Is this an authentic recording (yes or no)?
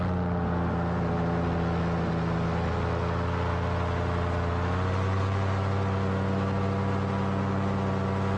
yes